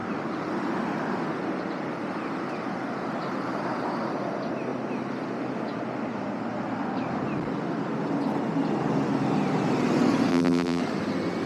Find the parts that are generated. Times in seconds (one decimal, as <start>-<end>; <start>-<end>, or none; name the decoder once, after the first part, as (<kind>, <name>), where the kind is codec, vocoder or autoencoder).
10.3-10.8 (vocoder, BigVGAN v2)